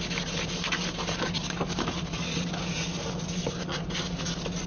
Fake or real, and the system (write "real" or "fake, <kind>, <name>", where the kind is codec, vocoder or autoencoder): real